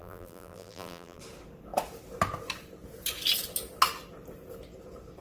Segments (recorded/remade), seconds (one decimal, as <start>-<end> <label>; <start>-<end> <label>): 0.0-1.2 remade; 1.2-5.2 recorded